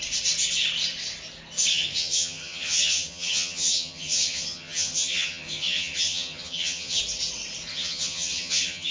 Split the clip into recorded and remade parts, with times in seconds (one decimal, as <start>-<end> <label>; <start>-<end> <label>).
0.0-1.7 recorded; 1.7-7.0 remade; 7.0-7.7 recorded; 7.7-8.9 remade